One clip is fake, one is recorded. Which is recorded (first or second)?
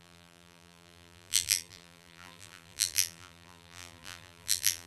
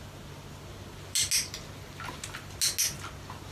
second